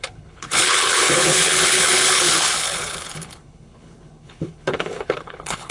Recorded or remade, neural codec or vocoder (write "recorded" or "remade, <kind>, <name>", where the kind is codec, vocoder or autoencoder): remade, codec, HILCodec